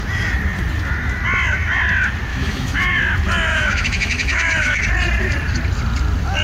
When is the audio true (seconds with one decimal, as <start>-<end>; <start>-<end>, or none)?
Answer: 0.0-2.3; 3.0-3.5; 4.8-6.4